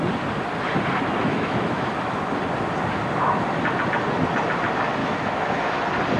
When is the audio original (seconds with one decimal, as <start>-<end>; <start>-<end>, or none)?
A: 0.0-1.2; 1.9-5.0; 5.7-6.2